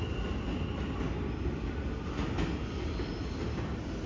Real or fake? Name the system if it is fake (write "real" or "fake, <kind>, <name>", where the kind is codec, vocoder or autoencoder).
real